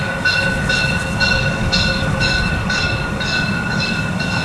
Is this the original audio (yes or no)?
no